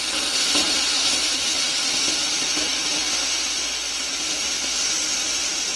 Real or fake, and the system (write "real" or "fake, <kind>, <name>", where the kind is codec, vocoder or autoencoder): real